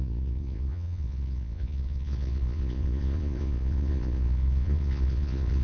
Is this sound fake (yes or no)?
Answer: yes